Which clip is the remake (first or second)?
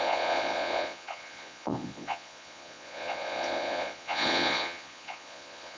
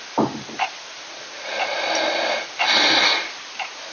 first